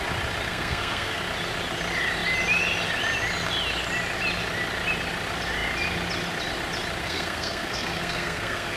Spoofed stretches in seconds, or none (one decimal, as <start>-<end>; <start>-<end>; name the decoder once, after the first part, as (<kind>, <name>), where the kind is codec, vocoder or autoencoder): 0.5-1.2 (codec, SNAC); 7.0-8.8